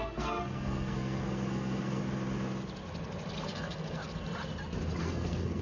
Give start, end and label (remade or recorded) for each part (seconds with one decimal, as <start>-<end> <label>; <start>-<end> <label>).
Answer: 0.0-2.0 remade; 2.0-3.4 recorded; 3.4-4.0 remade; 4.0-5.0 recorded; 5.0-5.6 remade